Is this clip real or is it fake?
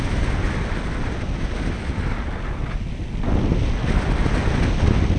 real